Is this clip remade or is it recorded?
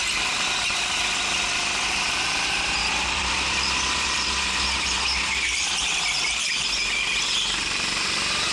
remade